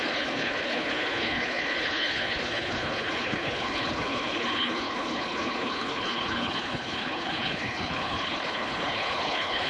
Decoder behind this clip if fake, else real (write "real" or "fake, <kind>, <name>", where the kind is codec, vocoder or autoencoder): fake, codec, HILCodec